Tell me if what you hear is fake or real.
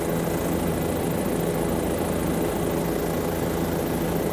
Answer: real